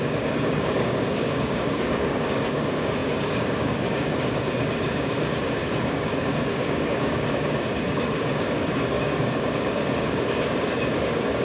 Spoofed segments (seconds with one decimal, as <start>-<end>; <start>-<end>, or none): 0.0-11.4

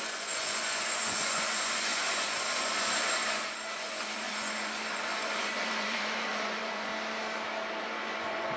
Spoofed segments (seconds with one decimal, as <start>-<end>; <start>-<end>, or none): 0.0-6.9; 7.8-8.6